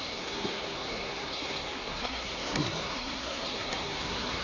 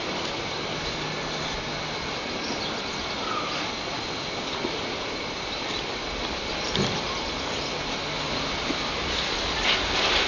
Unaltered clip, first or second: second